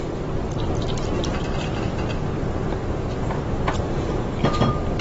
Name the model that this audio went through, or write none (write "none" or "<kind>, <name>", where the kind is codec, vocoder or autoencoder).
none